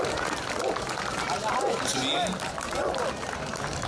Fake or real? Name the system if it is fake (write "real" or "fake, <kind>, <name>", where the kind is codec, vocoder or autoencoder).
real